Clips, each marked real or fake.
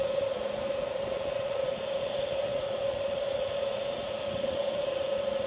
fake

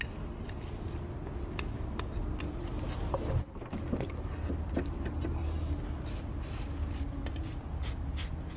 real